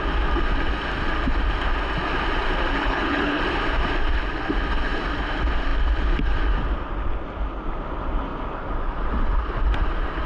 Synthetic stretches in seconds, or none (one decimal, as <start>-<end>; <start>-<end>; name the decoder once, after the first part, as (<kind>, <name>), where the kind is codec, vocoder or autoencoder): 2.8-3.4 (codec, HILCodec)

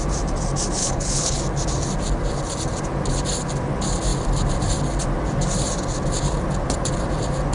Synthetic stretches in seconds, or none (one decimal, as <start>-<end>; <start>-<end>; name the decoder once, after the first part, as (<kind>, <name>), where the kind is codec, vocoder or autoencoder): 0.8-1.4 (codec, HILCodec)

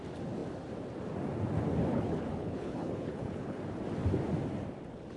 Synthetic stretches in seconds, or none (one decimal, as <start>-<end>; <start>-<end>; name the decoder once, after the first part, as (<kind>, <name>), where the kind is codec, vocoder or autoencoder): 1.9-3.6 (codec, HILCodec)

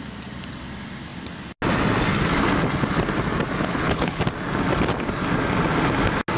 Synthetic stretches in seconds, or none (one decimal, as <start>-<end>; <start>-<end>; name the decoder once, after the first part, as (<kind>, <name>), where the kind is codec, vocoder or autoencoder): 3.6-4.2 (codec, HILCodec)

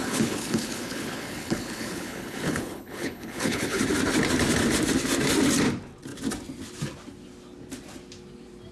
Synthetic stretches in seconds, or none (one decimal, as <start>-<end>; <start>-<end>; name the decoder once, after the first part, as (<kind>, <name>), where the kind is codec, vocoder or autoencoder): 0.0-3.8 (codec, HILCodec)

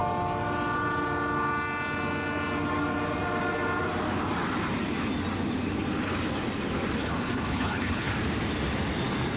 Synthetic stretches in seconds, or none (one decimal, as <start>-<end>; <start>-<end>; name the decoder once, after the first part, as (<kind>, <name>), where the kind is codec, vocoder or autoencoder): 7.0-8.1 (codec, HILCodec)

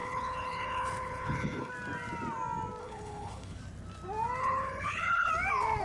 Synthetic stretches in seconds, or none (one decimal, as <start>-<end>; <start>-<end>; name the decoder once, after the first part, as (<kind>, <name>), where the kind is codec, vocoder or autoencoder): 0.0-1.7 (codec, HILCodec); 2.8-3.6; 4.4-5.3

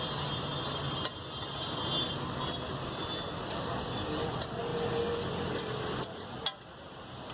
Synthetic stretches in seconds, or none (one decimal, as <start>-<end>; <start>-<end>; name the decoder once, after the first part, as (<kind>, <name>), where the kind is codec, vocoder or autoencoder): none